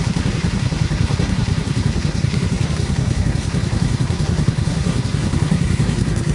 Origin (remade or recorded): remade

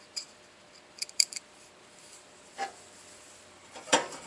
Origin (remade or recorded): remade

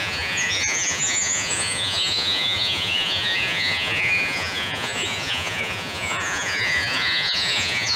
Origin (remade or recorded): remade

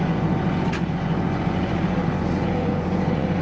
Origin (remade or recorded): remade